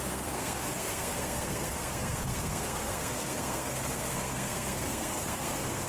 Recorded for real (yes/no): no